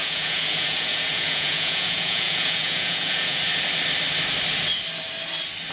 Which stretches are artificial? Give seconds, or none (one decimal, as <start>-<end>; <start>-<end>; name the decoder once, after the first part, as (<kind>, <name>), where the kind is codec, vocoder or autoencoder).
0.0-3.4 (vocoder, Vocos)